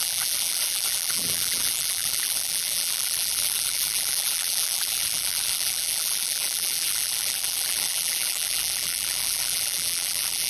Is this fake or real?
fake